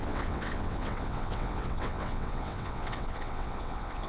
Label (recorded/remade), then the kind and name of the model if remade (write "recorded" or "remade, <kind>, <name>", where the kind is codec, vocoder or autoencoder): remade, vocoder, WaveNeXt